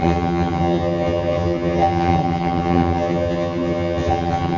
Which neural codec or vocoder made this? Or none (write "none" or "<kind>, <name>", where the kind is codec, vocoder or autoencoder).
vocoder, HiFi-GAN